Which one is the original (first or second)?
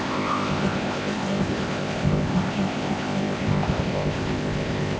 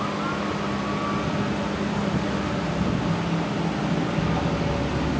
second